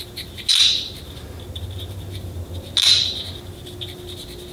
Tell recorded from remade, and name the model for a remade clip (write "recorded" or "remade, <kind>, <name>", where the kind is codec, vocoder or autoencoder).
recorded